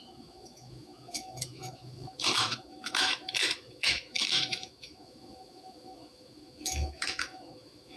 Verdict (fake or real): fake